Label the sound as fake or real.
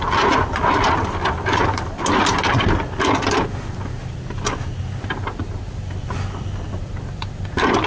real